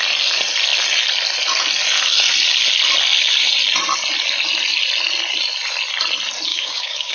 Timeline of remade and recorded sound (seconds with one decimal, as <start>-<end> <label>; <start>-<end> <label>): 0.0-6.5 recorded; 6.5-7.1 remade